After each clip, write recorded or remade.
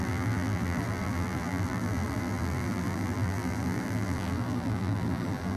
remade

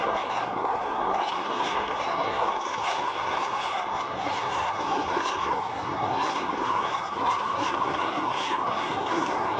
remade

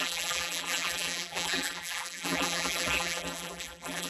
remade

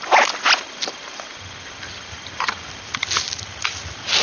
recorded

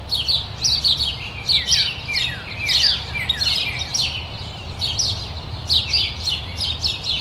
recorded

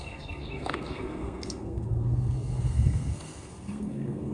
remade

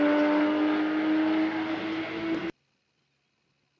recorded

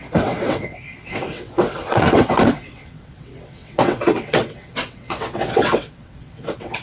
remade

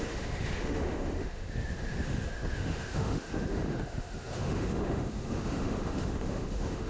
remade